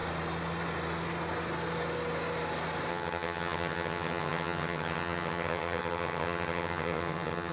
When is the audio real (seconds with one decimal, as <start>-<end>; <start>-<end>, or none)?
0.0-2.9